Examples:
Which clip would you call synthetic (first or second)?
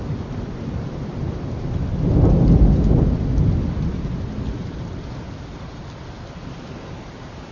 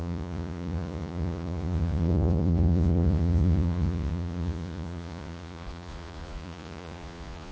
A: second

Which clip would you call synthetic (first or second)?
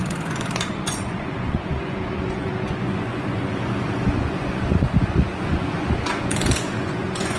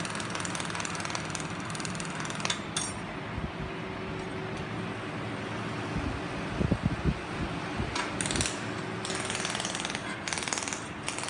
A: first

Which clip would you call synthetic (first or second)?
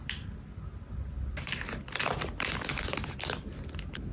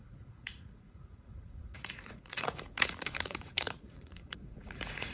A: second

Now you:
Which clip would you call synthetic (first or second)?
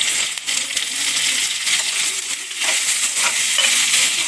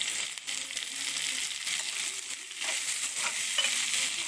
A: first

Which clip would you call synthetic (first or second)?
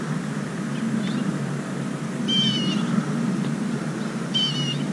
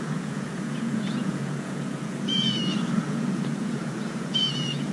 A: second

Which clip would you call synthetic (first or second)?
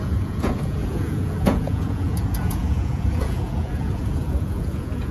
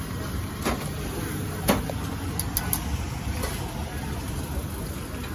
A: first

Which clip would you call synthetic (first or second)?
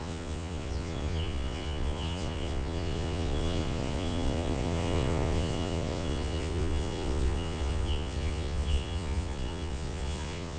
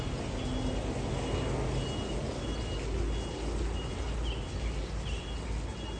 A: first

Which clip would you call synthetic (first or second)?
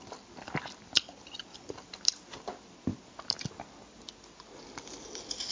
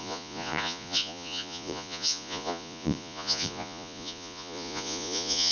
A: second